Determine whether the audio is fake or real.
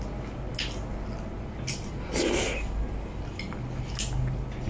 real